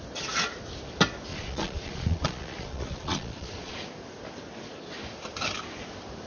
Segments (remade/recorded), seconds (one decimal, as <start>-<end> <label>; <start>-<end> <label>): 0.0-1.3 recorded; 1.3-3.7 remade; 3.7-6.3 recorded